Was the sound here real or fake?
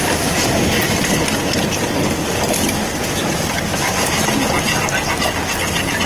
real